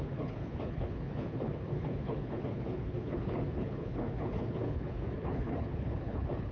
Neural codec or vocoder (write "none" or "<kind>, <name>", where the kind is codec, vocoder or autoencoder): codec, HILCodec